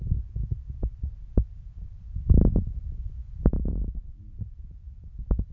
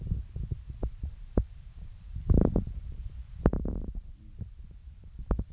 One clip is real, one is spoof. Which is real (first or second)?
first